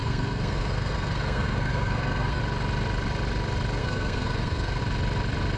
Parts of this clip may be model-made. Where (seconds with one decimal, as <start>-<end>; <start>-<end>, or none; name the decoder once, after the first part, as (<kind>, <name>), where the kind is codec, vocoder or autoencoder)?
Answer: 0.0-2.4 (codec, SNAC); 3.8-4.8

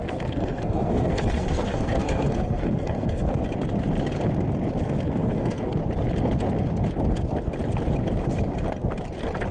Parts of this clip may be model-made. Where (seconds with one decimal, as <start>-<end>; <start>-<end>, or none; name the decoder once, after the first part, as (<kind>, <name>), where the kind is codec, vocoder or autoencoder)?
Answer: 0.0-3.4 (codec, SNAC); 4.8-5.8

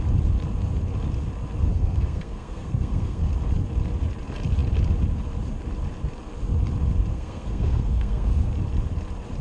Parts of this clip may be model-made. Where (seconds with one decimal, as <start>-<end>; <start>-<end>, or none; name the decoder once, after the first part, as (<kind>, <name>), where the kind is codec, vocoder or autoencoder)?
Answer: 1.6-3.3 (codec, SNAC); 7.1-8.5